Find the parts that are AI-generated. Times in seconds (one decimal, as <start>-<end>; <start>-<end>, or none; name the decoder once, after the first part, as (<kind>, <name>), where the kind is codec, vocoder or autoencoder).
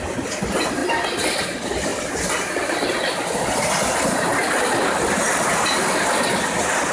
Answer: 4.3-6.1 (vocoder, BigVGAN v2)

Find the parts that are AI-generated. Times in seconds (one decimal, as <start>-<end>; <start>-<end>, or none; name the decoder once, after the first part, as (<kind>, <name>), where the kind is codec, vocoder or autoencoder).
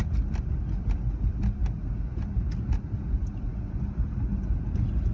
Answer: none